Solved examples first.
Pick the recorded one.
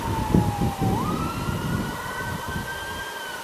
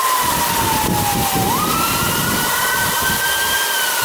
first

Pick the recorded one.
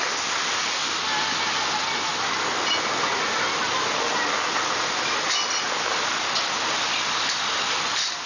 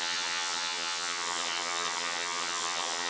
first